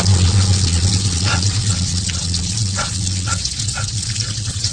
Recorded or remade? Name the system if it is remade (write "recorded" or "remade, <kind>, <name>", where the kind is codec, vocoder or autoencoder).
remade, vocoder, Vocos